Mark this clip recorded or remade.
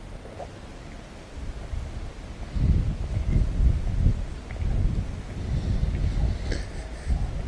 recorded